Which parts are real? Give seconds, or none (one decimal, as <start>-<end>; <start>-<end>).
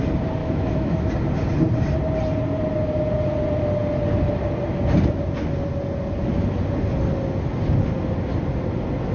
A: 0.0-0.4; 1.1-9.1